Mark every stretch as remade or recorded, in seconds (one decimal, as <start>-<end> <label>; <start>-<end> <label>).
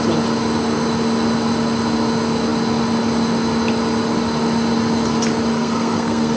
0.0-5.5 recorded; 5.5-6.4 remade